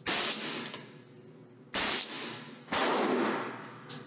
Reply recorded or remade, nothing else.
recorded